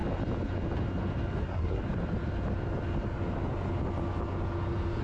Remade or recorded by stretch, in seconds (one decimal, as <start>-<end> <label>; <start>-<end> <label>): 0.0-1.4 recorded; 1.4-1.8 remade; 1.8-5.0 recorded